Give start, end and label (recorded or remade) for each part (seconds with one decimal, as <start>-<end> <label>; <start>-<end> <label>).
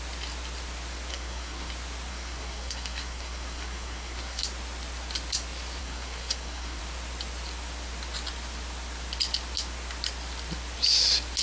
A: 0.0-1.1 recorded; 1.1-1.7 remade; 1.7-2.1 recorded; 2.1-4.4 remade; 4.4-5.8 recorded; 5.8-6.8 remade; 6.8-11.4 recorded